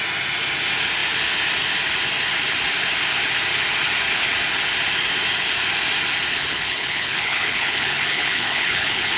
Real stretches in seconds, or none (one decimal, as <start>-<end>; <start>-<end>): 0.0-6.3

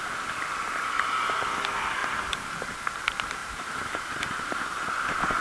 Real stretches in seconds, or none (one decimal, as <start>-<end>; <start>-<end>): 0.0-2.0; 2.7-3.4; 4.9-5.4

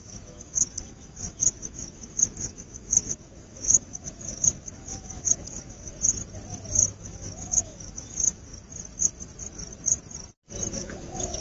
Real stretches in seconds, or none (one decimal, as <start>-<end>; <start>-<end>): 5.9-7.0; 8.5-10.7

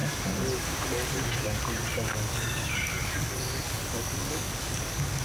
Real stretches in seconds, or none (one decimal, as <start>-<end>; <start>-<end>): 0.0-1.9

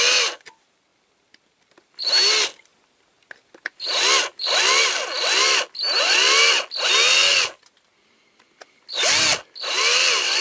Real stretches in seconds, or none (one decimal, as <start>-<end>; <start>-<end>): 0.0-10.4

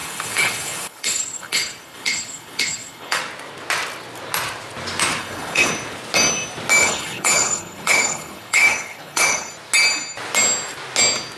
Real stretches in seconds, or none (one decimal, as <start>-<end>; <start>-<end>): 3.2-5.2; 5.7-6.8; 9.5-11.4

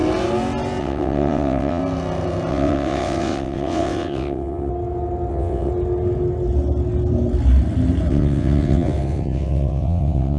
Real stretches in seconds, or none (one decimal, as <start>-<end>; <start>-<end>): 0.0-0.8; 1.8-2.5; 4.7-5.3; 5.7-8.1